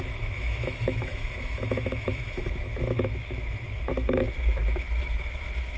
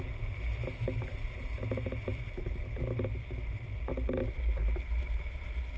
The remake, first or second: first